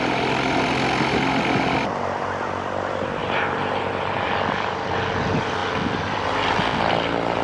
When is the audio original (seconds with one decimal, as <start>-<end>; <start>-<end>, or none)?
0.0-3.2; 4.1-7.4